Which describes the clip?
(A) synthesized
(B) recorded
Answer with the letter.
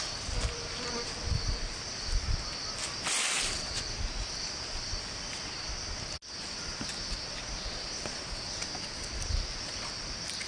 B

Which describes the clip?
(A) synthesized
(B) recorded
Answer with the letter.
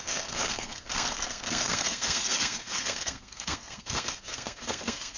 A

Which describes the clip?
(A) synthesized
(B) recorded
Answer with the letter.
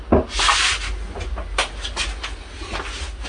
B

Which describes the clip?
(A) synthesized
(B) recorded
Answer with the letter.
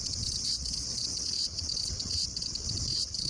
A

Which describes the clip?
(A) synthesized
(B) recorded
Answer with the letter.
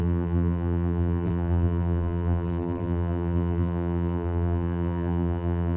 A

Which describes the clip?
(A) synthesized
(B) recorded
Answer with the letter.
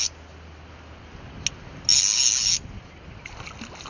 B